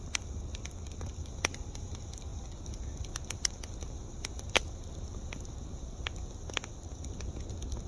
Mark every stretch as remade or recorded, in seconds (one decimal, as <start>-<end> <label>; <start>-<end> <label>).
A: 0.0-7.9 recorded